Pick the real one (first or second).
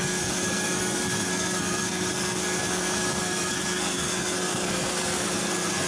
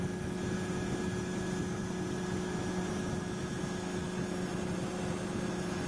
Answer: second